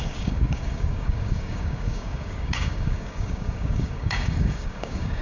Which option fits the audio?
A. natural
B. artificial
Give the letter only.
B